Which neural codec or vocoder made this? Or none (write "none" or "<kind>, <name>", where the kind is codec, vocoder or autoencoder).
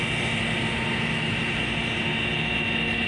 none